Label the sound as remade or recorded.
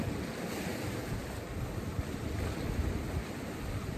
remade